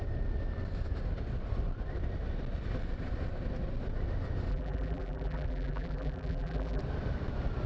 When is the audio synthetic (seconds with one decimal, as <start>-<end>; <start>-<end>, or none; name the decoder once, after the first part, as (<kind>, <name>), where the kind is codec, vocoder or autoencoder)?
4.5-6.8 (vocoder, BigVGAN v2)